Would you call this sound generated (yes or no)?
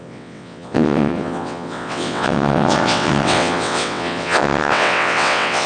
yes